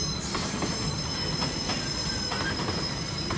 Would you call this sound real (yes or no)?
yes